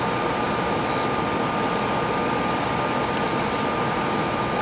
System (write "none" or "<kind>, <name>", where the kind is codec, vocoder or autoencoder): none